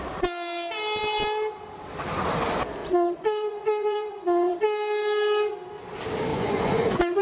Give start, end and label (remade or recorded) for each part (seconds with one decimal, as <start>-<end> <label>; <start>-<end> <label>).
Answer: 0.0-2.8 recorded; 2.8-4.6 remade; 4.6-6.3 recorded; 6.3-7.2 remade